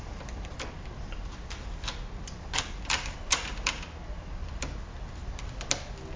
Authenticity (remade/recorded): recorded